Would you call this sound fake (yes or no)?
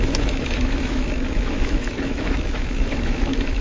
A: yes